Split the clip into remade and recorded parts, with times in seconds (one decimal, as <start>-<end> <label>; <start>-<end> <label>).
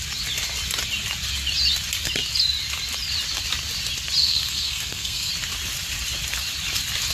0.0-4.2 recorded; 4.2-5.3 remade; 5.3-7.1 recorded